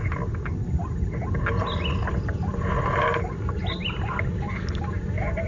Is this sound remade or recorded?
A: recorded